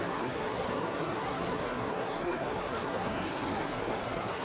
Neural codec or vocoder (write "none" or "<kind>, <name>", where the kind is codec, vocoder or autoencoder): codec, SNAC